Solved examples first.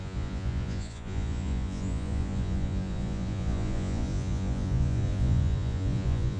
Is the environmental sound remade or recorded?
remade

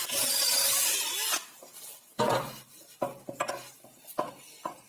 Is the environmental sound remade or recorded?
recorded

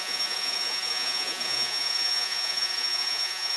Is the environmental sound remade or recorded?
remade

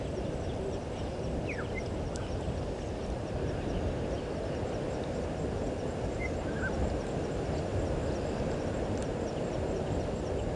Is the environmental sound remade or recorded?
recorded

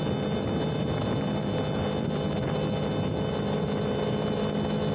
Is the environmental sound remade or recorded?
recorded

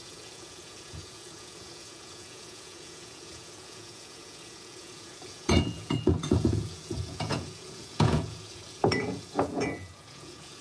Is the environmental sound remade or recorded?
remade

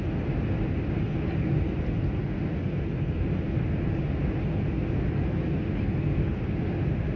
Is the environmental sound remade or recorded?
recorded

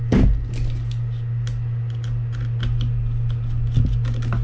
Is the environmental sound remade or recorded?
recorded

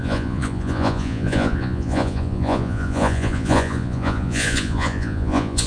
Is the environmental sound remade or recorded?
remade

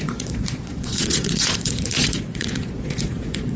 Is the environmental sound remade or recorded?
remade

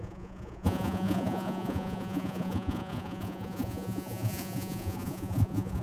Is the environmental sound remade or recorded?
remade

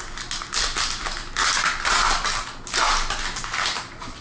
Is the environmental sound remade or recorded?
recorded